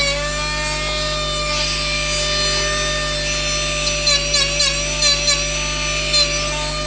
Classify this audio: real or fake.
real